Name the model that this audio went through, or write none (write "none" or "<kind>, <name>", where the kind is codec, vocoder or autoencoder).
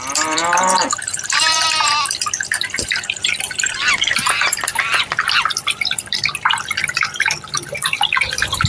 vocoder, BigVGAN v2